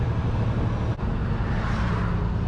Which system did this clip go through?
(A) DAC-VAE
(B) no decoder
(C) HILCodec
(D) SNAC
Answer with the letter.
B